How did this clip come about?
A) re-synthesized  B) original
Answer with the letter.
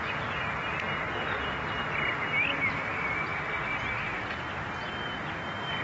B